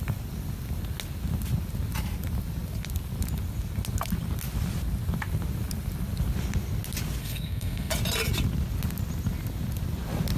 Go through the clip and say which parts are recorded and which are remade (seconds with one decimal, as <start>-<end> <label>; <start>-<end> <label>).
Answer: 0.0-7.2 recorded; 7.2-7.9 remade; 7.9-10.4 recorded